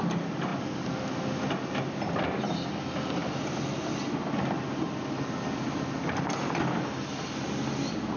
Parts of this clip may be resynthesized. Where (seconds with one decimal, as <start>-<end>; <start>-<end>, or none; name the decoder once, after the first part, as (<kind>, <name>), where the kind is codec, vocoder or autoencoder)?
none